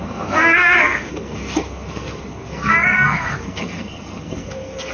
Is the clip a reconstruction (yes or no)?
yes